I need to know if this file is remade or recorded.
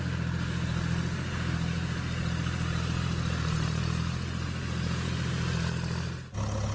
recorded